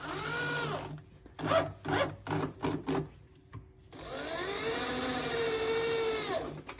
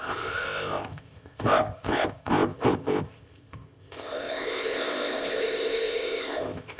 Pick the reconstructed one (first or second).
second